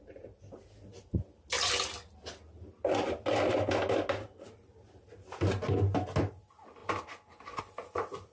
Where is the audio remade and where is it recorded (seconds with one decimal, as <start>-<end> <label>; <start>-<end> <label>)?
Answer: 0.0-8.3 recorded